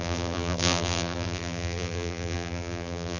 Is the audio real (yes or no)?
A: no